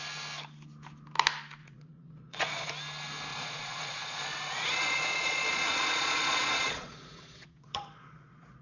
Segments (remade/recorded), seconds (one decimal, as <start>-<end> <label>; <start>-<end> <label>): 0.0-1.6 recorded; 1.6-2.7 remade; 2.7-3.3 recorded; 3.3-8.6 remade